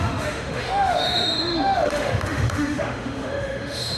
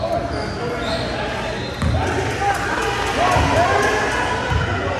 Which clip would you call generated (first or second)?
first